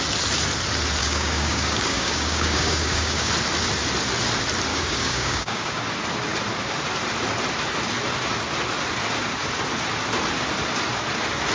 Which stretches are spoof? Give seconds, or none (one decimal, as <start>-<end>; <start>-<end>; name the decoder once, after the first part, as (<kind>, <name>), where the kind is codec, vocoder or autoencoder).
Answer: 1.0-3.3 (codec, DAC); 4.7-5.8